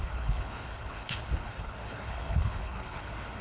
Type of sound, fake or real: fake